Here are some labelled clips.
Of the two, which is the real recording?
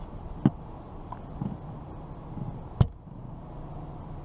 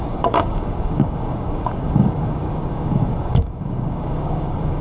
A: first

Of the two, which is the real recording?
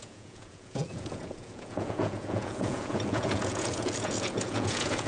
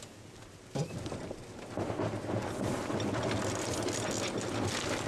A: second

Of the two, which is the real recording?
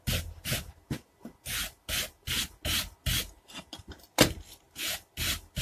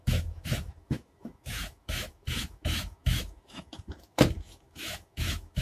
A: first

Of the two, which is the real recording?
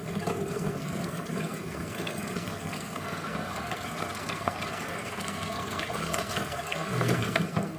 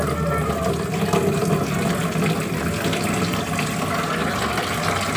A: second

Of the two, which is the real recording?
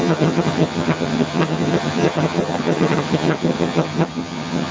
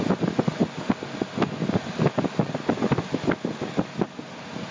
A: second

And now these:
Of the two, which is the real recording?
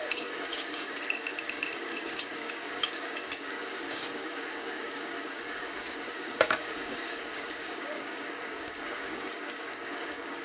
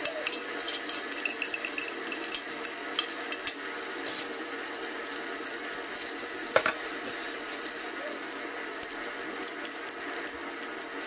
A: second